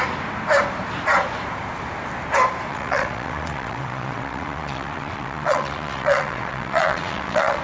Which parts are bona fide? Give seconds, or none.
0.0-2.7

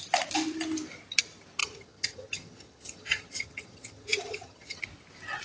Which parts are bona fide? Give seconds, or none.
0.0-1.6; 4.8-5.4

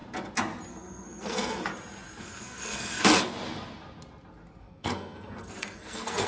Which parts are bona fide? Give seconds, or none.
0.0-0.7; 1.7-2.2; 3.1-4.6

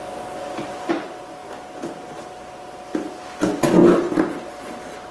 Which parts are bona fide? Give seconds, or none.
0.0-5.1

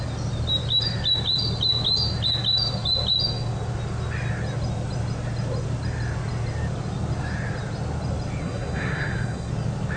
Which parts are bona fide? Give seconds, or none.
0.0-8.4; 9.5-10.0

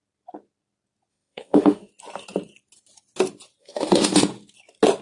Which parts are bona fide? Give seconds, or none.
0.0-1.1; 1.9-3.6; 4.2-5.0